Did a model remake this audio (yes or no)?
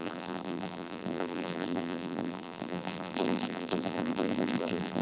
yes